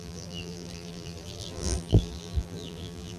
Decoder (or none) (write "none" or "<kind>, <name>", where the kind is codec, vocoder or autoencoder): vocoder, BigVGAN v2